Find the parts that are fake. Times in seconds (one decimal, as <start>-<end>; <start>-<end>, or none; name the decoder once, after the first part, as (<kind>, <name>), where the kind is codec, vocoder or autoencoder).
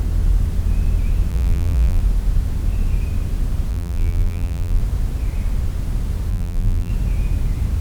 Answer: 1.3-2.0 (vocoder, BigVGAN v2); 3.7-4.8; 6.3-6.9